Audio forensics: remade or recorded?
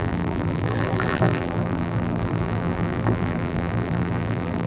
remade